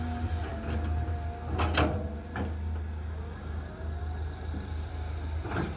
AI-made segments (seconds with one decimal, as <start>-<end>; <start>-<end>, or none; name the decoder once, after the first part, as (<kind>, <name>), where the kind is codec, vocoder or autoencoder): none